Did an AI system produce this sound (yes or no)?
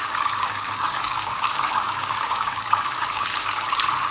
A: yes